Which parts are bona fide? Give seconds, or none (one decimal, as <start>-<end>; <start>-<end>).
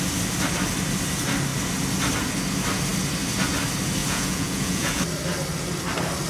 0.0-4.0; 5.0-6.3